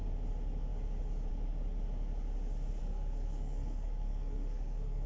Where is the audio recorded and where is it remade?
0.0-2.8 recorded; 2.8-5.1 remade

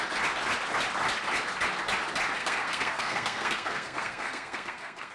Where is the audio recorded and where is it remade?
0.0-2.4 recorded; 2.4-5.1 remade